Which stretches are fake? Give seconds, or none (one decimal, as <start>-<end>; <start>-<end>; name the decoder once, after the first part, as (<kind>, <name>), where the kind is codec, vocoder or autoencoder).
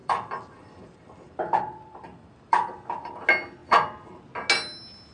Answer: 0.0-3.1 (vocoder, BigVGAN v2)